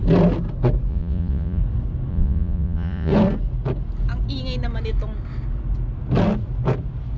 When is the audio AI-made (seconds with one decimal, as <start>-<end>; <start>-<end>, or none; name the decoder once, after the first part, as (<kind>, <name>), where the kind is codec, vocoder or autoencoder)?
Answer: 0.9-1.6 (vocoder, Vocos); 2.1-3.1